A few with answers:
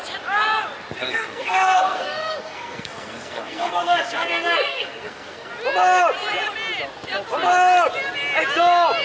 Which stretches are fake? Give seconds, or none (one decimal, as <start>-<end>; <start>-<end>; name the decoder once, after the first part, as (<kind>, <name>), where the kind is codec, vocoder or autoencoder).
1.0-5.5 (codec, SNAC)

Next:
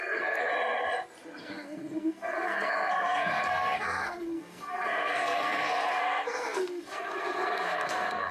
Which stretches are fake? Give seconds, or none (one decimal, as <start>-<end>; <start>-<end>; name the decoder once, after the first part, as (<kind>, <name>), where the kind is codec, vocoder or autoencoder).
0.0-0.5 (codec, SNAC); 1.4-8.3

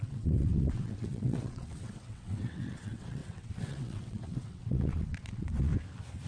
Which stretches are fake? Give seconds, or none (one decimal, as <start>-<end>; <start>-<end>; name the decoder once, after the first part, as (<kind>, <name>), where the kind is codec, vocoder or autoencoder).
0.0-5.7 (vocoder, WaveNeXt)

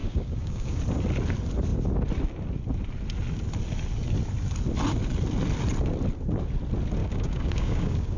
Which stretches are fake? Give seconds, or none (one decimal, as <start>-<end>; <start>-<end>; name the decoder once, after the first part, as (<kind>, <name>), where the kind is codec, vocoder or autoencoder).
0.0-0.8 (codec, DAC); 7.0-8.2

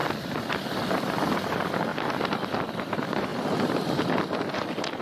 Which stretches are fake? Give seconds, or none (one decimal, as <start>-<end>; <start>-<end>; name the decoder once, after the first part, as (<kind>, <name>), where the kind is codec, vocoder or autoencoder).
0.9-1.9 (vocoder, BigVGAN v2); 2.8-3.3